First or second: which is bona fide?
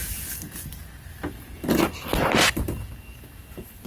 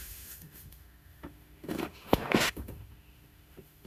first